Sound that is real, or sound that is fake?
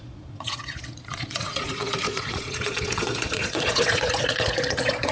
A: fake